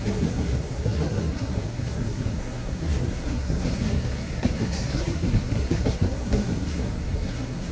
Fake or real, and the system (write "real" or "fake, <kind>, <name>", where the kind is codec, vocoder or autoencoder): fake, codec, SNAC